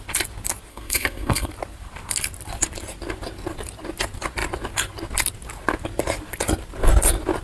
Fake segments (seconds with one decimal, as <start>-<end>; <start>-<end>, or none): 0.7-1.5